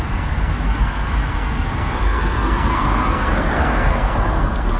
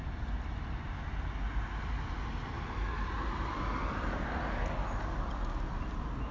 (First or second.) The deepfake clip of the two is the first